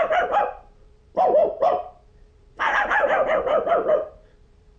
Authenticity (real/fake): fake